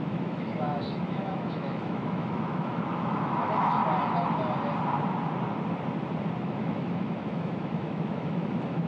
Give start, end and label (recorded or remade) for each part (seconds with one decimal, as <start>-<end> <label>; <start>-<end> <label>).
0.0-3.8 remade; 3.8-6.4 recorded; 6.4-8.9 remade